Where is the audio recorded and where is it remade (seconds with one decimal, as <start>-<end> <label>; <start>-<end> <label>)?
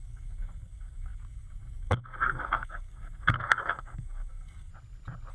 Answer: 0.0-4.7 remade; 4.7-5.3 recorded